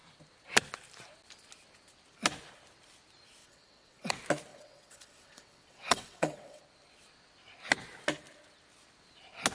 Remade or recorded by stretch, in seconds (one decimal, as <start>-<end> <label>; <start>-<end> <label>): 0.0-3.4 recorded; 3.4-4.1 remade; 4.1-4.5 recorded; 4.5-6.6 remade; 6.6-9.5 recorded